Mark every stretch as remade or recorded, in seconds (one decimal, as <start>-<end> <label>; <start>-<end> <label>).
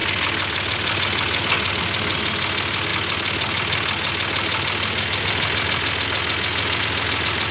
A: 0.0-7.5 recorded